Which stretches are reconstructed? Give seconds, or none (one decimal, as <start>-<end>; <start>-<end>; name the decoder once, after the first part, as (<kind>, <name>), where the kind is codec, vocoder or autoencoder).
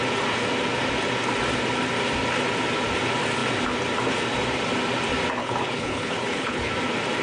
5.4-6.7 (codec, HILCodec)